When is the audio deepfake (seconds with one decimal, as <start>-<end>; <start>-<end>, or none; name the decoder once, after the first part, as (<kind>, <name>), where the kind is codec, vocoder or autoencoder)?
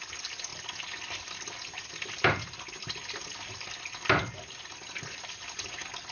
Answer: none